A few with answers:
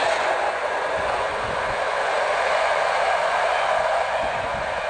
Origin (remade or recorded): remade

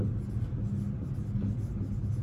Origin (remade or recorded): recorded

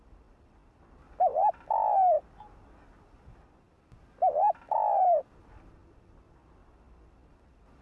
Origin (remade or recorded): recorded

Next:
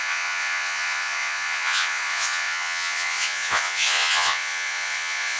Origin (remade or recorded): remade